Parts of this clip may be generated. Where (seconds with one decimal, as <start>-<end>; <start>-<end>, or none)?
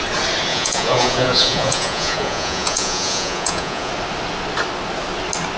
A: 0.5-3.9